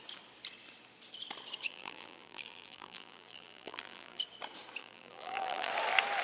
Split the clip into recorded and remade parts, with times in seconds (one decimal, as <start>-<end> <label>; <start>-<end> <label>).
0.0-1.7 recorded; 1.7-4.2 remade; 4.2-4.8 recorded; 4.8-5.7 remade; 5.7-6.2 recorded